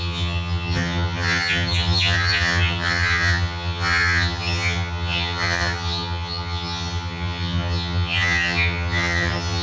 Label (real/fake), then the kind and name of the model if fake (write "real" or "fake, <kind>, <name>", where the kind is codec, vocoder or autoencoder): fake, vocoder, HiFi-GAN